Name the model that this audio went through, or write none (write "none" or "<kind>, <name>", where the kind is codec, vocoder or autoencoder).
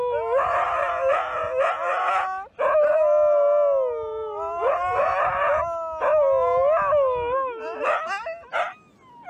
none